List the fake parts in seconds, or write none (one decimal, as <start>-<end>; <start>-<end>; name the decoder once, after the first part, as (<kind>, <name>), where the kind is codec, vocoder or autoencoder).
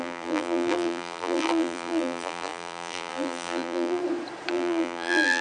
0.0-4.0 (vocoder, BigVGAN v2); 4.5-5.4